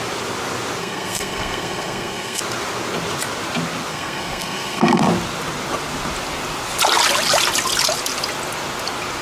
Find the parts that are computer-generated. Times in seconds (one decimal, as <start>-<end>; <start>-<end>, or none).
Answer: 0.8-2.4; 3.9-5.0